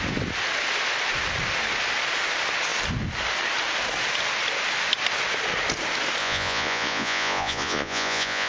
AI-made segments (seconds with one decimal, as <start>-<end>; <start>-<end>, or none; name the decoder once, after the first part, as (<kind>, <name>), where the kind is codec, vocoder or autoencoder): 6.2-8.5 (vocoder, Vocos)